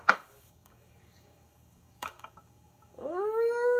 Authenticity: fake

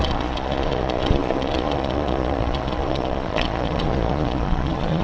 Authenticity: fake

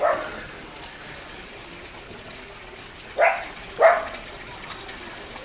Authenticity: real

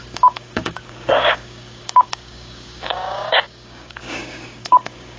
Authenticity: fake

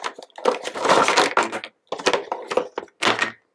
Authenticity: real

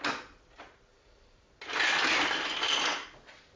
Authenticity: real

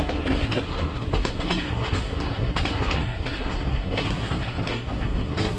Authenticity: fake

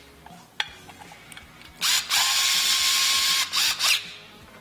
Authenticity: real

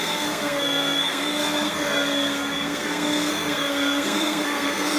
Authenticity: fake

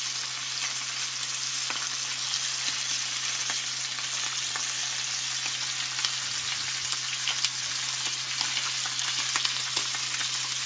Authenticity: real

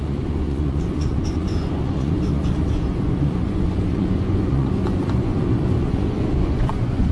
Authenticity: fake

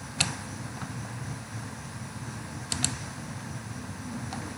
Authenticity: real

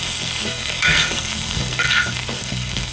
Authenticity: fake